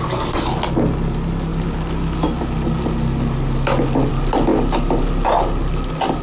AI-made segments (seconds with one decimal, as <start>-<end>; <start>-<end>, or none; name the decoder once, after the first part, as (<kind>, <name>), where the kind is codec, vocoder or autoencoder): none